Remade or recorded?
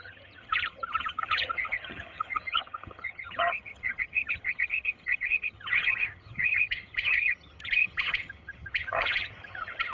remade